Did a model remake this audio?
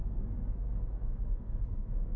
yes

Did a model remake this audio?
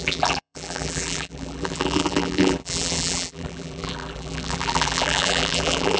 yes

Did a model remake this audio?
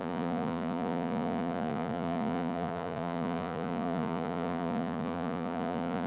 yes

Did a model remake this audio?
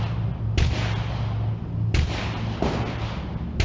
no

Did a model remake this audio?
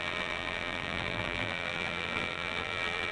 yes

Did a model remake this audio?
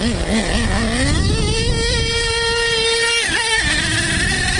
no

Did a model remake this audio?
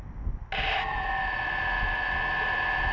no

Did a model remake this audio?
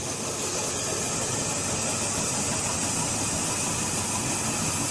no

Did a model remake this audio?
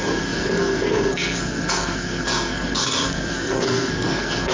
yes